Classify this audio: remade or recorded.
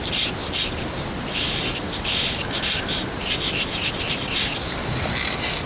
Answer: recorded